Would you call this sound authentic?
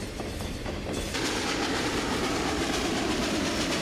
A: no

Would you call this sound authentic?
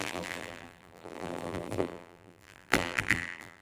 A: no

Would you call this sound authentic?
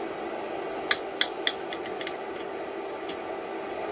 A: yes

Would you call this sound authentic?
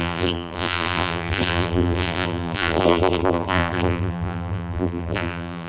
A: no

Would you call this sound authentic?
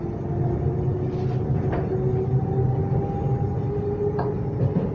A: yes